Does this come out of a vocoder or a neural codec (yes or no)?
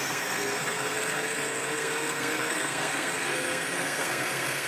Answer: yes